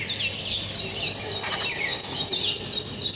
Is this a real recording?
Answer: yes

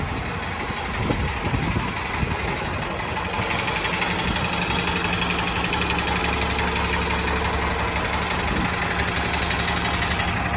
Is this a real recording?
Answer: yes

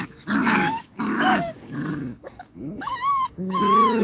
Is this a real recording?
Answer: no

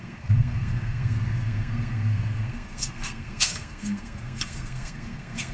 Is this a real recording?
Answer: no